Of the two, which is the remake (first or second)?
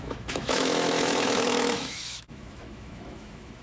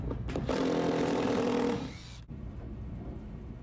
first